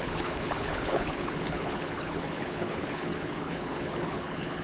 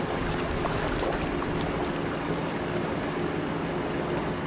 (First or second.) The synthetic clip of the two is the first